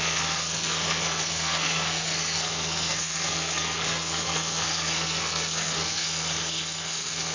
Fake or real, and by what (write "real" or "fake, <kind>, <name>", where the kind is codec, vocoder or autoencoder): fake, codec, SNAC